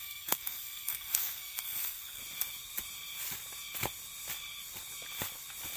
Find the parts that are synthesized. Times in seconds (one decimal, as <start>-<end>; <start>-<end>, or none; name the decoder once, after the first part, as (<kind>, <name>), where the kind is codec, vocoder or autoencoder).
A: 0.0-2.2 (codec, SNAC)